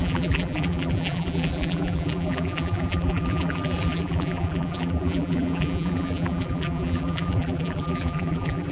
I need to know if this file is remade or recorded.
remade